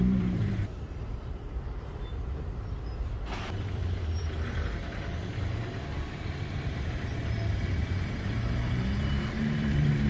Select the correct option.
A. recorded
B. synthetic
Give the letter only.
B